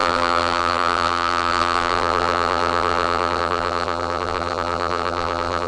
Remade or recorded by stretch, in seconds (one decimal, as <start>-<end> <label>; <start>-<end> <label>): 0.0-5.7 remade